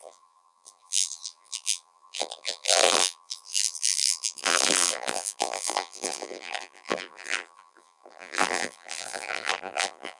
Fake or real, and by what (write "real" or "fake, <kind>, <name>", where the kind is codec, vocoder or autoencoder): fake, vocoder, BigVGAN v2